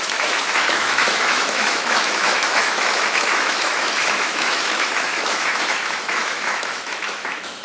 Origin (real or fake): fake